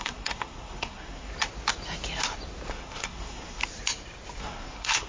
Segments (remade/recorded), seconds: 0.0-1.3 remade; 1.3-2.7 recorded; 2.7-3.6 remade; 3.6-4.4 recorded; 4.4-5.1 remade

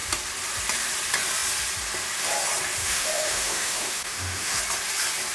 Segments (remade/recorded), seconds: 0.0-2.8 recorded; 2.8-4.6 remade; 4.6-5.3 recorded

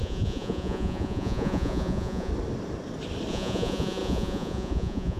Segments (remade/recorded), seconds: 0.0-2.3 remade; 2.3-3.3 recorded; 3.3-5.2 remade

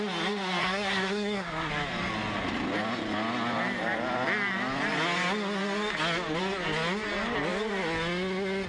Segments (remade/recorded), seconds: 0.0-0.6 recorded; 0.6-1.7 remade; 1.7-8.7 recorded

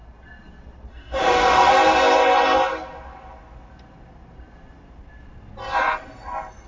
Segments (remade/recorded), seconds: 0.0-0.9 recorded; 0.9-1.7 remade; 1.7-6.7 recorded

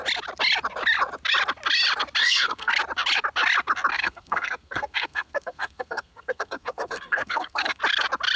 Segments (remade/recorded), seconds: 0.0-2.2 recorded; 2.2-2.7 remade; 2.7-3.9 recorded; 3.9-7.8 remade; 7.8-8.4 recorded